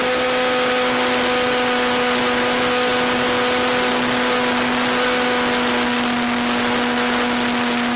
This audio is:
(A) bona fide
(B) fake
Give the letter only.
A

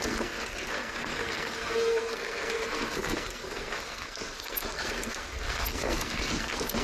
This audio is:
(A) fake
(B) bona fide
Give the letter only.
A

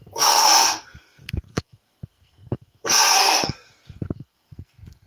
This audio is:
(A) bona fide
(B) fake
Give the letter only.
B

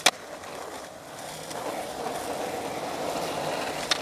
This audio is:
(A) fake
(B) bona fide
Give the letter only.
B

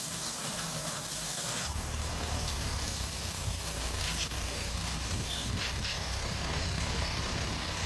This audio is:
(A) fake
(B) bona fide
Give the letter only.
A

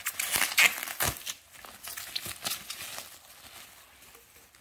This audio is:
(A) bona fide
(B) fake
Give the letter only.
A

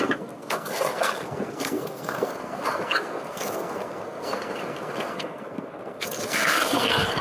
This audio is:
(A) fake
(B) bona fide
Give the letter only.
A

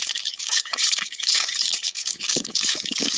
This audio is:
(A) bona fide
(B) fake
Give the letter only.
B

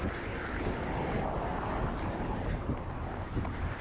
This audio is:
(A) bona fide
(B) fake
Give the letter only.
A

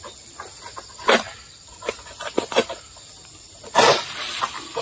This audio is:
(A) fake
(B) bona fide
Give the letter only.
B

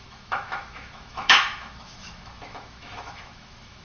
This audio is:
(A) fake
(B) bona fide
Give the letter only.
A